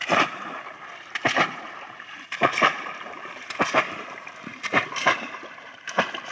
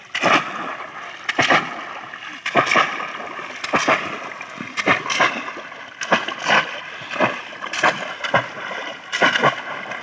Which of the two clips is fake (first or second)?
first